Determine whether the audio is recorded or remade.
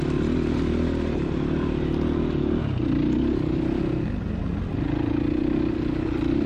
recorded